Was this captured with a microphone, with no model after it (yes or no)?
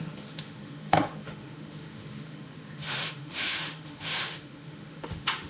no